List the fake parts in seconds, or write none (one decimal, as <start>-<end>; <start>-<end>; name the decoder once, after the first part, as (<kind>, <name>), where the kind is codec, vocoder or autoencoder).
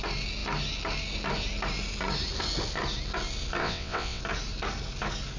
3.6-4.2 (vocoder, WaveNeXt)